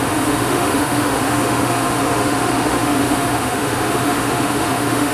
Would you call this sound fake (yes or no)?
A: yes